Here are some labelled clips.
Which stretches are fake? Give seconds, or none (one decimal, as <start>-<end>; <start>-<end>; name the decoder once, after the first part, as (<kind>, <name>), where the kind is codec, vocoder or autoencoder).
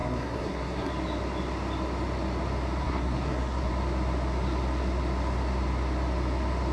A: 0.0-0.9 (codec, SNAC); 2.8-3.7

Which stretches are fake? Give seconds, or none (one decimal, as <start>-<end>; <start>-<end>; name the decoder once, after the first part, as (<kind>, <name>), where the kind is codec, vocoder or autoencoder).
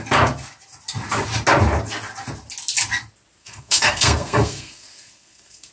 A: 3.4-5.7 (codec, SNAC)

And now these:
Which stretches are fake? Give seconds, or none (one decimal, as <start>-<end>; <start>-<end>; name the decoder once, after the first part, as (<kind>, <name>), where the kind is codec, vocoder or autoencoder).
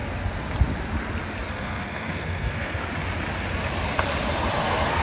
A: 1.5-2.8 (codec, SNAC); 4.6-5.0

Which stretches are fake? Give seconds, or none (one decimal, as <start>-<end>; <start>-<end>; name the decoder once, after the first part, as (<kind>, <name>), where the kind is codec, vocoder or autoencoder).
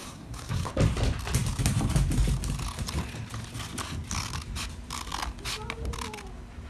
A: 0.0-0.7 (codec, SNAC)